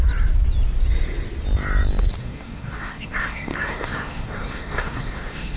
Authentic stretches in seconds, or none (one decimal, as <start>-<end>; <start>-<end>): 0.0-2.2

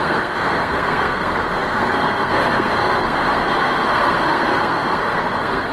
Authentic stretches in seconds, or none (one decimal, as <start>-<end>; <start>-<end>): none